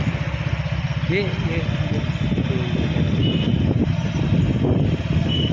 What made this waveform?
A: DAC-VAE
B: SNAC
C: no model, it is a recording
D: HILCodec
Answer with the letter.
C